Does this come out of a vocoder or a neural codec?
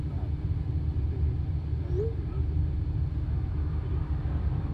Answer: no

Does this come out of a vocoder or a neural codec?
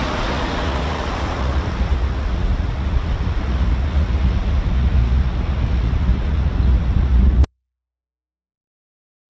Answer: yes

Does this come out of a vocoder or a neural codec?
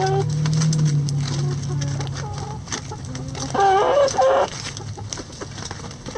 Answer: no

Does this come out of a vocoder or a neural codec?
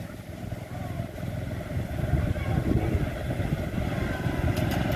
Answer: no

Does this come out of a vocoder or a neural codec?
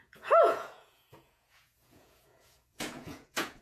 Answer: yes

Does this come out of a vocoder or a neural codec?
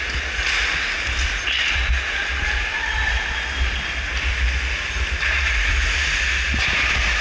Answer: no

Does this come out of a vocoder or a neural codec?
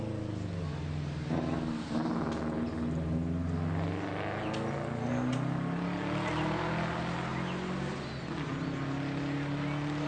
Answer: no